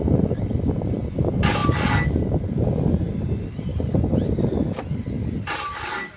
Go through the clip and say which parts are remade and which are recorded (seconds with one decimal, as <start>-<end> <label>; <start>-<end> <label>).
0.0-6.2 recorded